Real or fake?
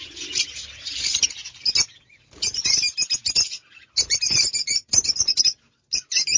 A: real